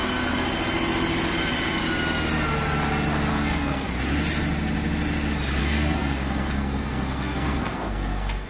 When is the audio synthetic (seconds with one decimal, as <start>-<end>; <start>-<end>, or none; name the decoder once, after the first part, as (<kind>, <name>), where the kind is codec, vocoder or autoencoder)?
3.3-3.9 (codec, SNAC); 5.6-8.5